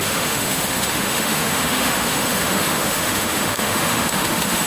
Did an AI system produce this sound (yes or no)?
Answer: yes